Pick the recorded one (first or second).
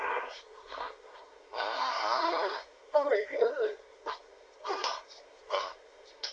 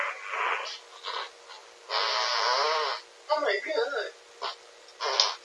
second